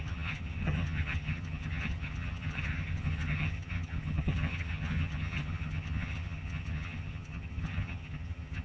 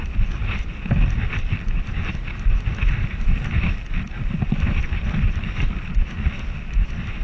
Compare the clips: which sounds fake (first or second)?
first